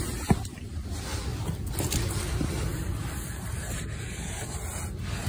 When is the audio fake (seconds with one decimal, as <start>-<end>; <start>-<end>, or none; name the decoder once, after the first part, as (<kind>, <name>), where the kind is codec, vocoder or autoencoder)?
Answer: 1.3-2.2 (vocoder, BigVGAN v2); 2.7-3.6